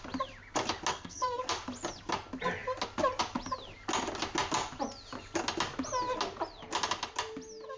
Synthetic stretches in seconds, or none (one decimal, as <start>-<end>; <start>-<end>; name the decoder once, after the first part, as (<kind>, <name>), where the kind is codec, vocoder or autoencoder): 0.9-1.4 (codec, SNAC)